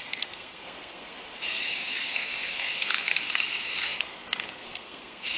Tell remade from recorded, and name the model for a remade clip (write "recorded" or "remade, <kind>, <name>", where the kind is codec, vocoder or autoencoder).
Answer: remade, codec, SNAC